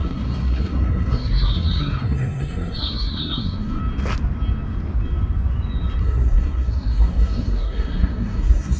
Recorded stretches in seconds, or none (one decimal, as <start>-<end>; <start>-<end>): 3.8-6.0